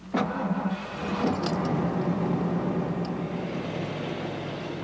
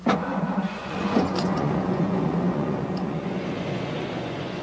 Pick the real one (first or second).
first